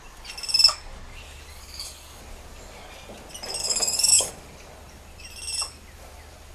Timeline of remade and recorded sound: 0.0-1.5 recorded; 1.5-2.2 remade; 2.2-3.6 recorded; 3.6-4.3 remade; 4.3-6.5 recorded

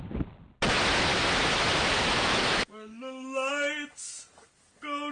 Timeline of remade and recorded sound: 0.0-1.1 recorded; 1.1-3.5 remade; 3.5-5.1 recorded

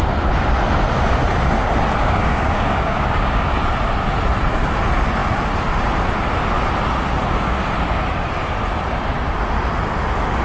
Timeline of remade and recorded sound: 0.0-2.0 recorded; 2.0-3.5 remade; 3.5-10.4 recorded

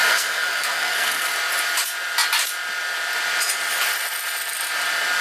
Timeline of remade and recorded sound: 0.0-1.3 remade; 1.3-5.2 recorded

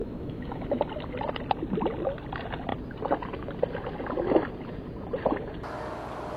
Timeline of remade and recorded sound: 0.0-0.8 remade; 0.8-6.4 recorded

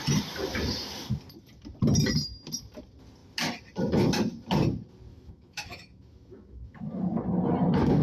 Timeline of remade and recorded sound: 0.0-5.1 recorded; 5.1-7.0 remade; 7.0-8.0 recorded

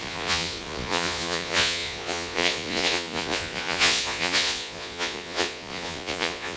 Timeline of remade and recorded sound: 0.0-6.6 remade